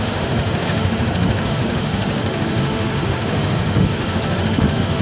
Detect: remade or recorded remade